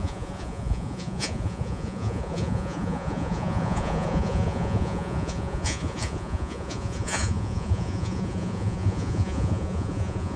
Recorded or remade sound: remade